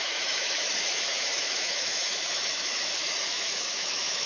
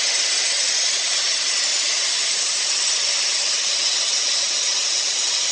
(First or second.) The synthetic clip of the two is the first